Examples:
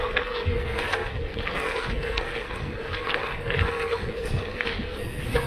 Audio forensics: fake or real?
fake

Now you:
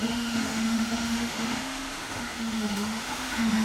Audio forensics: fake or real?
fake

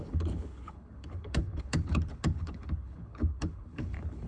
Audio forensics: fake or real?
fake